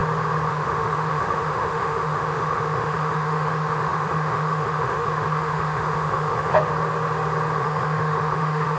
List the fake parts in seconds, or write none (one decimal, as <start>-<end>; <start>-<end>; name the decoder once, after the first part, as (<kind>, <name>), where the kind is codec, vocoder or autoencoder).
0.5-6.7 (autoencoder, DAC-VAE); 7.6-8.8